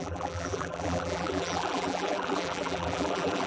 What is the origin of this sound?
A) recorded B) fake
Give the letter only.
B